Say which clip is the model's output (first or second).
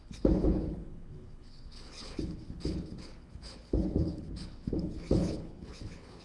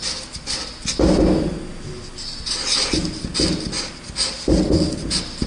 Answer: first